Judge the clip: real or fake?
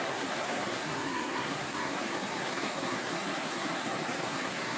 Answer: fake